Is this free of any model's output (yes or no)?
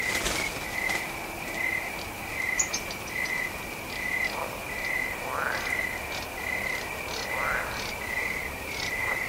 yes